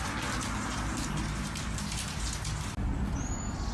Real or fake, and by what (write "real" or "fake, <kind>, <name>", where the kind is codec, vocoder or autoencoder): real